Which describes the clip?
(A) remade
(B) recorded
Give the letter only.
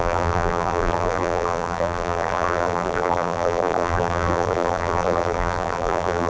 A